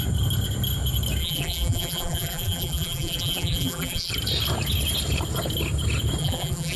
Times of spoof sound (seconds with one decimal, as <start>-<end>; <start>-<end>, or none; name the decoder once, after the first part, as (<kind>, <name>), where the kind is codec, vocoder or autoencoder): 1.2-4.1 (vocoder, BigVGAN v2); 6.2-6.8